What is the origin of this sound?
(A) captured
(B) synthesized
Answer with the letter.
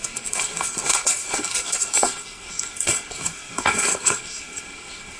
B